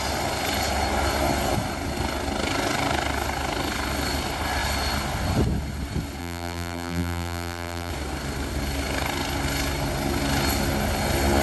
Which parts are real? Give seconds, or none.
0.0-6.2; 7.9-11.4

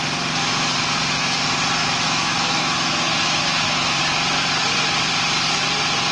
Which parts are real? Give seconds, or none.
0.0-1.8; 4.0-6.1

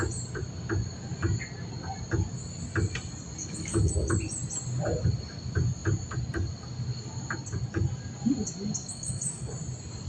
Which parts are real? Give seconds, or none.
0.0-3.4; 3.9-8.8; 9.5-10.1

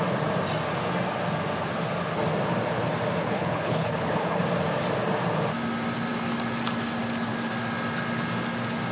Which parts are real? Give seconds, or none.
0.0-3.2; 4.4-8.9

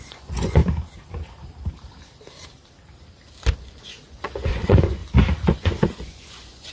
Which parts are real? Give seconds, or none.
0.6-3.6; 5.0-5.5

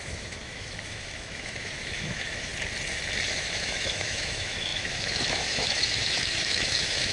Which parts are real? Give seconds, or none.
2.5-3.3